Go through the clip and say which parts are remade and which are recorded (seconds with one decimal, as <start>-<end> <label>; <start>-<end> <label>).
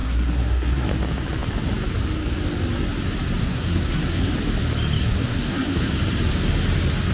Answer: 0.0-0.9 remade; 0.9-3.4 recorded; 3.4-4.3 remade; 4.3-5.0 recorded; 5.0-5.9 remade; 5.9-7.1 recorded